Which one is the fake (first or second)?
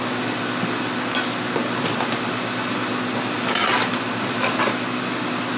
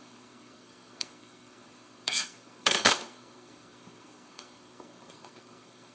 second